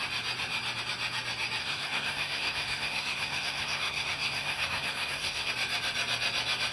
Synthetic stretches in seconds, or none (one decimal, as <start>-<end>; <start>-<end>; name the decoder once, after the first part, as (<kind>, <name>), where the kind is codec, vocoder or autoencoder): 1.6-5.5 (codec, SNAC)